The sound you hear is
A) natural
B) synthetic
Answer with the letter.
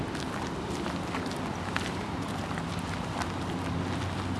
A